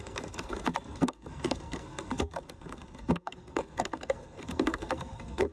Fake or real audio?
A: fake